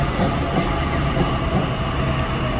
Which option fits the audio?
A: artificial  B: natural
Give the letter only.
B